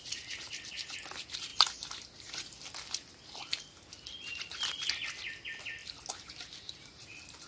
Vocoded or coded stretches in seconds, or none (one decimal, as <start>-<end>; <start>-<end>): none